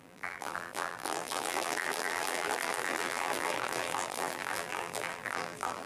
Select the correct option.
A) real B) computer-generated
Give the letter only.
B